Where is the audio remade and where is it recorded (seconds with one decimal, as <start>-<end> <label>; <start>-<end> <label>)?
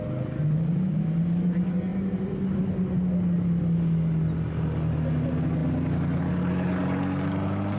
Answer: 0.0-7.8 recorded